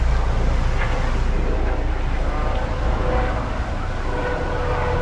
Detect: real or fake real